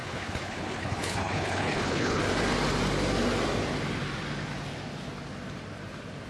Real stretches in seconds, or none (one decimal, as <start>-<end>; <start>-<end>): 2.2-6.3